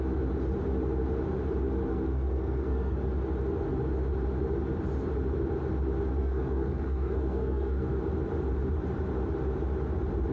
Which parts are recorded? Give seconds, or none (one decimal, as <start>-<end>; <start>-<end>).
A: 0.0-1.9; 3.0-6.2; 8.0-10.3